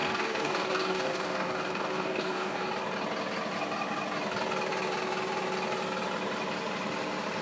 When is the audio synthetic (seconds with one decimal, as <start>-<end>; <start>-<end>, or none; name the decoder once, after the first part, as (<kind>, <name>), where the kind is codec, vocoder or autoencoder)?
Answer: 0.0-2.7 (codec, DAC)